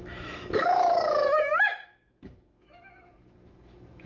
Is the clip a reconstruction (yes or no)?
yes